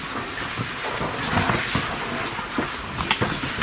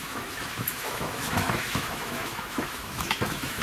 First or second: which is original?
first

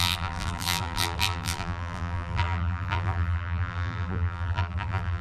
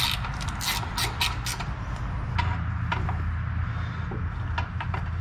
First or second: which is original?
second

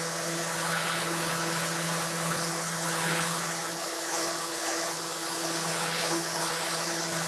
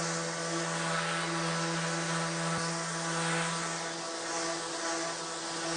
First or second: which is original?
second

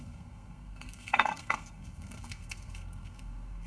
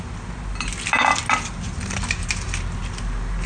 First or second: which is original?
second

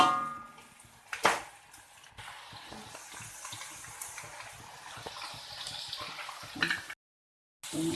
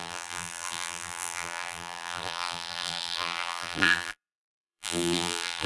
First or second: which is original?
first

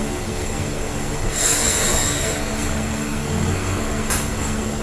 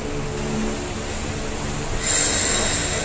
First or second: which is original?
second